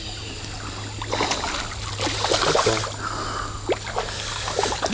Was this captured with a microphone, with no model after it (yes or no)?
yes